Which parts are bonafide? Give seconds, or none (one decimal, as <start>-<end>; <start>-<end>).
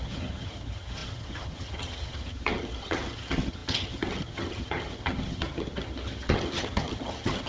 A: none